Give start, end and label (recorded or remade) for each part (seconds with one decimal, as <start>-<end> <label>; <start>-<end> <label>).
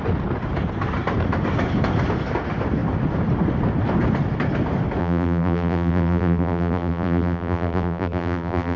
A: 0.0-5.0 recorded; 5.0-8.8 remade